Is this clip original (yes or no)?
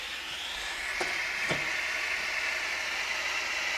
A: no